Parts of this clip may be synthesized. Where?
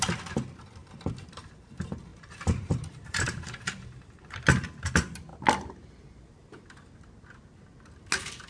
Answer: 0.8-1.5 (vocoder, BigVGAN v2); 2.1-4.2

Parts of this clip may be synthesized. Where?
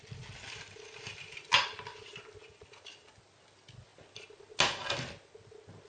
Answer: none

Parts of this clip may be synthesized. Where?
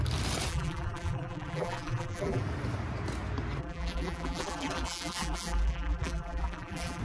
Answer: 0.5-2.4 (vocoder, BigVGAN v2); 3.6-7.0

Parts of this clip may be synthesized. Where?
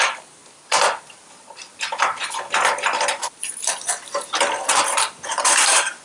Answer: 0.0-0.4 (vocoder, BigVGAN v2); 3.1-6.0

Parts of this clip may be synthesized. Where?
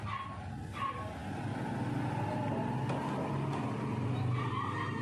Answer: none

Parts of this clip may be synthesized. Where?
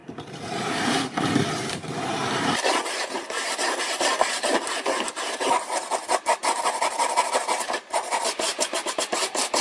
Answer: 0.0-9.6 (vocoder, BigVGAN v2)